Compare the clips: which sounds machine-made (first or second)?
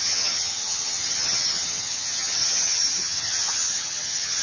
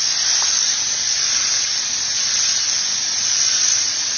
first